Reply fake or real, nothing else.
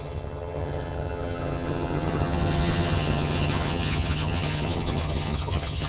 fake